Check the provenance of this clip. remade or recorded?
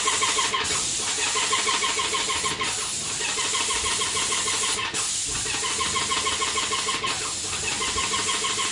recorded